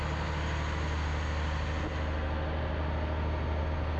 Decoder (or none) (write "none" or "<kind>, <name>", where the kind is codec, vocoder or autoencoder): none